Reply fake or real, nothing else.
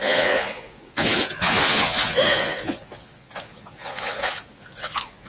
fake